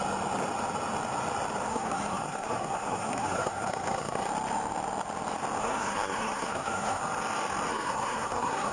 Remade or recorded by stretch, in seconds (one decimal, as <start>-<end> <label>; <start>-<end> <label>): 0.0-1.7 recorded; 1.7-4.3 remade; 4.3-5.6 recorded; 5.6-7.0 remade; 7.0-7.7 recorded; 7.7-8.7 remade